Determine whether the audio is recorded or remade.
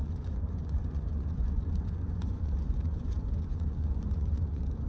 remade